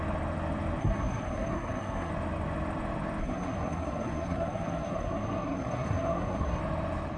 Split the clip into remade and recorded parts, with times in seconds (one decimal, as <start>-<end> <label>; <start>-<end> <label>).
0.0-0.8 recorded; 0.8-2.1 remade; 2.1-3.2 recorded; 3.2-6.6 remade; 6.6-7.2 recorded